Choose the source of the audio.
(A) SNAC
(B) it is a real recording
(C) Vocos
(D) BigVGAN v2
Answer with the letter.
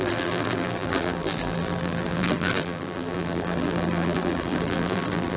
D